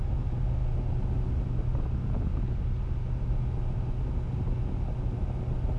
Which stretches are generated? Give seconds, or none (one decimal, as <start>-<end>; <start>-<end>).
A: none